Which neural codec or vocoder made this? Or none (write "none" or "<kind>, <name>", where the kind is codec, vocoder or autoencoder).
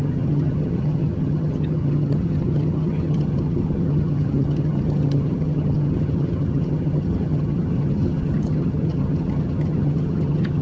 vocoder, HiFi-GAN